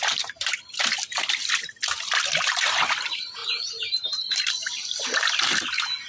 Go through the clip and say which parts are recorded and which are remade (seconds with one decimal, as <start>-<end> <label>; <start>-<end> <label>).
0.0-3.4 recorded; 3.4-4.5 remade; 4.5-6.1 recorded